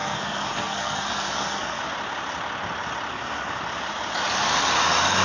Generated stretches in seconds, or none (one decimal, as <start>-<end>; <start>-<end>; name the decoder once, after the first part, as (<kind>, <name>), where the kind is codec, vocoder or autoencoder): 0.0-1.8 (codec, SNAC); 3.1-3.6